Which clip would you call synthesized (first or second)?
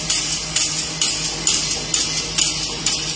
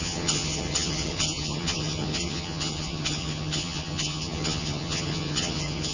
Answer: second